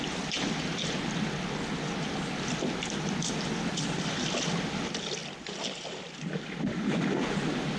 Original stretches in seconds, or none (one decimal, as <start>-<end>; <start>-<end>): 0.0-7.8